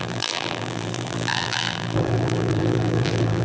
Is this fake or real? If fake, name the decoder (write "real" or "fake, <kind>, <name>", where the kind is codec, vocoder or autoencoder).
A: fake, vocoder, BigVGAN v2